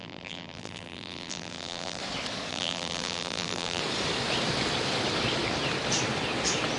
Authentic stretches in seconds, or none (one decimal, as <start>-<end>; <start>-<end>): 2.0-2.5; 3.8-6.8

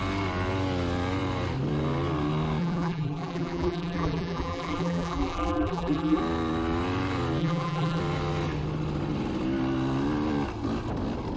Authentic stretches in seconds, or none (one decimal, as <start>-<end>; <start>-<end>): 0.0-2.6; 6.2-7.4; 8.0-11.4

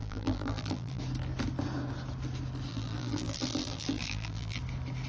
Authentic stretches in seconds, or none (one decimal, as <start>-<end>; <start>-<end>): 1.0-2.7; 4.6-5.1